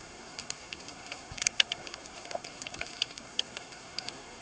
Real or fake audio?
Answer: fake